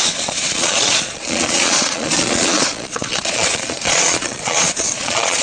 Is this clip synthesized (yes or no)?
yes